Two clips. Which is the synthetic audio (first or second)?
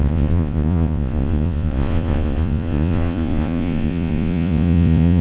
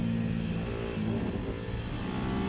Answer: first